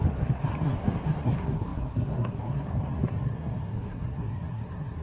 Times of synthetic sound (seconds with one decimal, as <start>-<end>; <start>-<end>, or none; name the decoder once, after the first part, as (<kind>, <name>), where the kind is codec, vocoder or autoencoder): 0.0-5.0 (codec, SNAC)